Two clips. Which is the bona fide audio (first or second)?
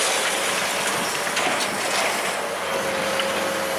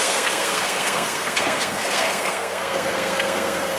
first